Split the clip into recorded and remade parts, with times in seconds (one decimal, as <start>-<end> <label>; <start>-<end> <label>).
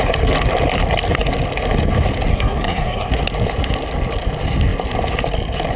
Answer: 0.0-2.3 recorded; 2.3-3.1 remade; 3.1-5.8 recorded